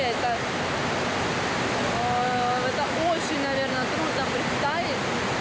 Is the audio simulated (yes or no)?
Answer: no